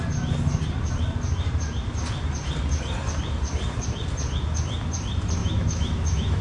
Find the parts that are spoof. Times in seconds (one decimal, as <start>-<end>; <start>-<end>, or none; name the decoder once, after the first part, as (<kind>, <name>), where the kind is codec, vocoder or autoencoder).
5.4-6.4 (autoencoder, DAC-VAE)